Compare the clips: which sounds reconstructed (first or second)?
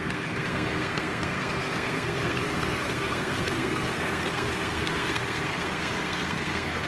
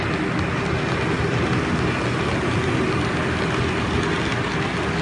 first